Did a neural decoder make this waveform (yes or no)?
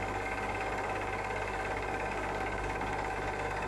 yes